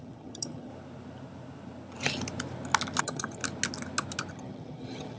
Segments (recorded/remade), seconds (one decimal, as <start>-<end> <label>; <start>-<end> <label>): 0.0-0.7 remade; 0.7-3.0 recorded; 3.0-3.4 remade; 3.4-4.3 recorded; 4.3-5.2 remade